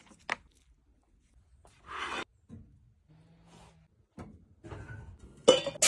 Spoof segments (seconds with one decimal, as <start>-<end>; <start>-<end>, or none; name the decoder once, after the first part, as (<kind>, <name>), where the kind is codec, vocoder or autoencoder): none